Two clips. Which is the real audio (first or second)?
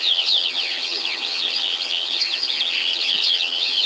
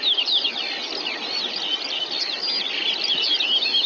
second